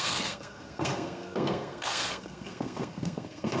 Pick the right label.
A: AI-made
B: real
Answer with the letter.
A